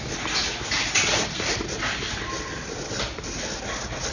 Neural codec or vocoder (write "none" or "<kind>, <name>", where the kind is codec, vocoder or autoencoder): none